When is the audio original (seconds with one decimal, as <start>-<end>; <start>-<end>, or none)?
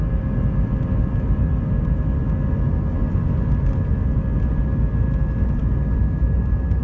0.0-6.8